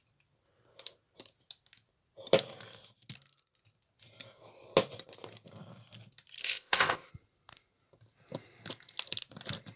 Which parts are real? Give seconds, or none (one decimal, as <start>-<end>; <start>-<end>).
0.0-6.4; 7.1-9.8